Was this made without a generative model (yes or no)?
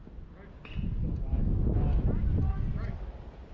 yes